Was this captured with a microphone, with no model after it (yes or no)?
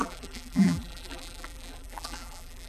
no